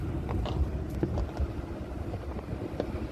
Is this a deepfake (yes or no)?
no